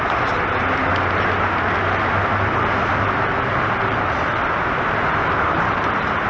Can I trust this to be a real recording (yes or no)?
yes